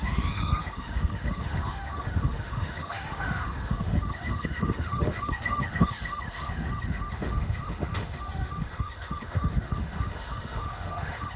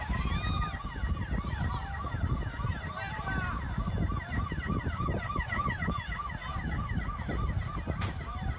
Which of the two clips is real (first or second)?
second